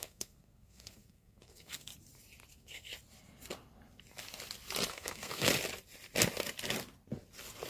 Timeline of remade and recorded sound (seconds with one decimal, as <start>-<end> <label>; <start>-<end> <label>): 0.0-1.9 remade; 1.9-2.5 recorded; 2.5-2.9 remade; 2.9-4.9 recorded; 4.9-5.5 remade; 5.5-7.7 recorded